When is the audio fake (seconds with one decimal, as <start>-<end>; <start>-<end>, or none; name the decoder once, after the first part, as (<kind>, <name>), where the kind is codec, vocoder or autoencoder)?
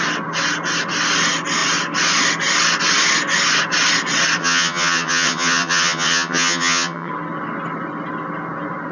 4.4-7.1 (vocoder, HiFi-GAN)